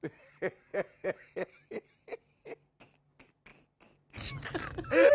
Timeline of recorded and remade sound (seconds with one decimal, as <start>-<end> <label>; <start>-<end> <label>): 0.0-0.7 recorded; 0.7-1.3 remade; 1.3-5.1 recorded